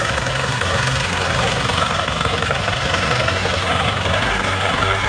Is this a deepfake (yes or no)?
yes